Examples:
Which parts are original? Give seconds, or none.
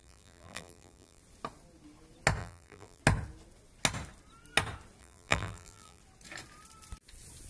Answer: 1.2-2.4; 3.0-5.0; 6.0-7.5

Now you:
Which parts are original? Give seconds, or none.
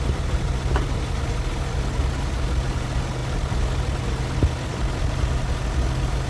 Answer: 0.0-6.3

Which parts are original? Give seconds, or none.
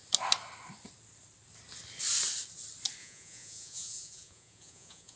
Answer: 0.0-3.0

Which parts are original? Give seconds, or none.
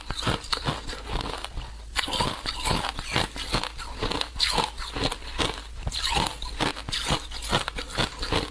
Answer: 0.0-8.5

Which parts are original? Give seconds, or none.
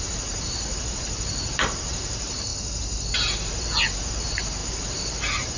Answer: 2.5-3.1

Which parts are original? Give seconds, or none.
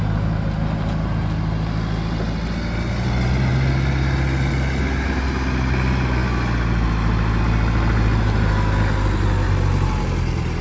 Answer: 0.0-10.6